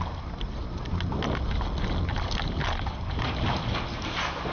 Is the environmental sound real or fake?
real